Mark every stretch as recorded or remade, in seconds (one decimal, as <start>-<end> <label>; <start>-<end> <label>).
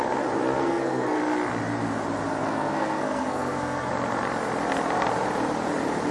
0.0-0.6 recorded; 0.6-1.2 remade; 1.2-2.4 recorded; 2.4-3.9 remade; 3.9-6.1 recorded